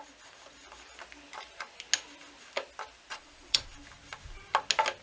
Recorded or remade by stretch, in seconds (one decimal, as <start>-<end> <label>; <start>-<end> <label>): 0.0-3.1 recorded; 3.1-3.6 remade; 3.6-5.0 recorded